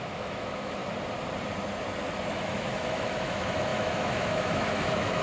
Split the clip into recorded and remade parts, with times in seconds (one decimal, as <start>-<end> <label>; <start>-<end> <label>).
0.0-0.8 remade; 0.8-2.3 recorded; 2.3-5.2 remade